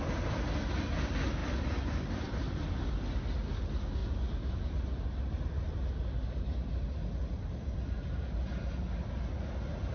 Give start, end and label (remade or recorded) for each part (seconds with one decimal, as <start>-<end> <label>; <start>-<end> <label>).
0.0-1.4 recorded; 1.4-2.6 remade; 2.6-9.9 recorded